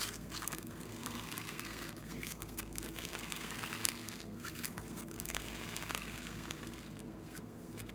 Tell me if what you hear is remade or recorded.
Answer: remade